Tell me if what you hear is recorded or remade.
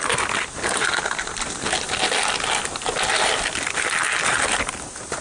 recorded